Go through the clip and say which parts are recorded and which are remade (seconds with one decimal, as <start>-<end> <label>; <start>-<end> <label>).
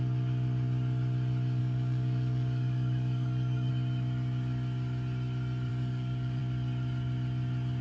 0.0-1.6 recorded; 1.6-3.7 remade; 3.7-5.7 recorded; 5.7-6.4 remade; 6.4-7.8 recorded